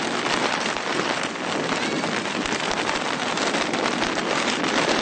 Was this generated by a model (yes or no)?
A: no